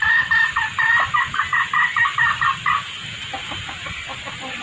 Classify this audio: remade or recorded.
recorded